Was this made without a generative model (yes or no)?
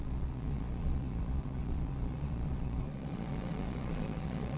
no